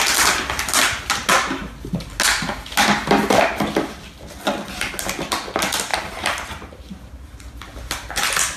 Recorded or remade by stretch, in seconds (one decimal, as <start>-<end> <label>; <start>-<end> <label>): 0.0-5.9 recorded; 5.9-6.5 remade; 6.5-8.6 recorded